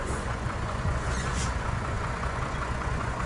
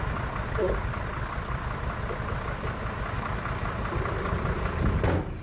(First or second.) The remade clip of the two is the first